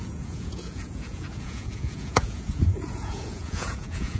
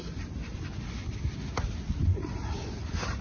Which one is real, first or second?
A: second